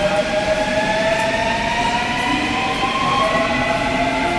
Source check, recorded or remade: recorded